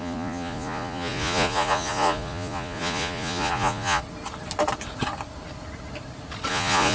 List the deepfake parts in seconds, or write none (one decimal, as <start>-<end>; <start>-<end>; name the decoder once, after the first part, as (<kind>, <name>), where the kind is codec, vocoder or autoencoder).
0.0-4.0 (vocoder, Vocos); 6.5-6.9

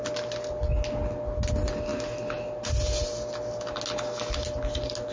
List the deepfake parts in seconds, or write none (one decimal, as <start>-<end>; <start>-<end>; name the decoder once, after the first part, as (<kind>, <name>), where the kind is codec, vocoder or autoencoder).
none

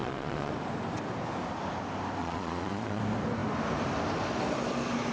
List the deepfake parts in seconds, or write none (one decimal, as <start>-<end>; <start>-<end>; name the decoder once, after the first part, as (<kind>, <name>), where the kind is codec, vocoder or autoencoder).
0.0-0.5 (vocoder, Vocos); 2.2-3.0

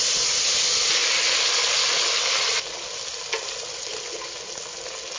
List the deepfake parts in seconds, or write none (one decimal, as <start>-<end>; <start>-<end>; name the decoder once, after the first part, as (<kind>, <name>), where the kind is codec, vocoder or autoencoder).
none

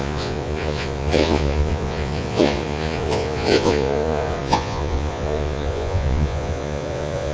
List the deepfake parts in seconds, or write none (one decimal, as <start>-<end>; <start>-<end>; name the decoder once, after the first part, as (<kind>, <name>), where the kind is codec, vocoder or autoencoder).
0.0-7.3 (vocoder, Vocos)

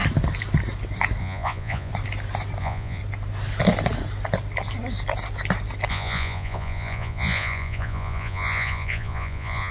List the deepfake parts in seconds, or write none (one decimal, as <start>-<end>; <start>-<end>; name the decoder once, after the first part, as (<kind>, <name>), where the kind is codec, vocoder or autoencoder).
1.2-1.9 (vocoder, Vocos); 2.6-3.0; 5.9-9.7